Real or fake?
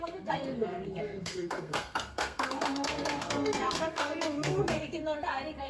fake